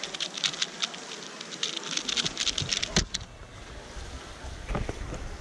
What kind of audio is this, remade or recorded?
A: recorded